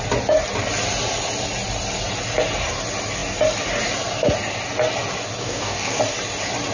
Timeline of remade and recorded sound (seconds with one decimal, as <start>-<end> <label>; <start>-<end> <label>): 0.0-5.4 recorded; 5.4-6.0 remade; 6.0-6.7 recorded